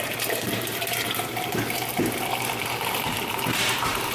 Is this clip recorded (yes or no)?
no